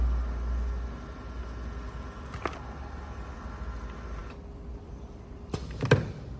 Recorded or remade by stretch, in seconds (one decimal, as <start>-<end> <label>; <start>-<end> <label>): 0.0-6.4 recorded